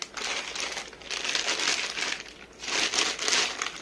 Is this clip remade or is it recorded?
recorded